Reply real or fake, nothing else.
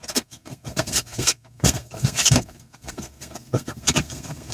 fake